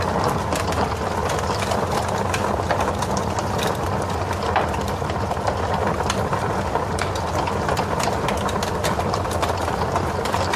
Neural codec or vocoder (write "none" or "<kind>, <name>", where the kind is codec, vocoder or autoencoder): none